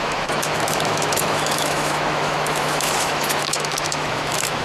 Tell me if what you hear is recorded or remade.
remade